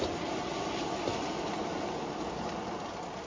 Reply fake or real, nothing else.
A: real